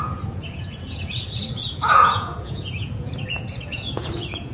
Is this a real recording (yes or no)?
no